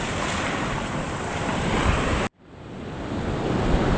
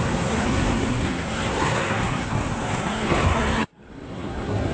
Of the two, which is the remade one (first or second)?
second